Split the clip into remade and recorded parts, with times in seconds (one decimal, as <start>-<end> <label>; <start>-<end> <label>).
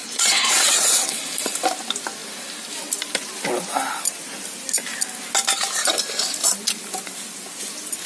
0.0-1.2 remade; 1.2-8.1 recorded